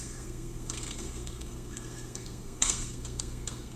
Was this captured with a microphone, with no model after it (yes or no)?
no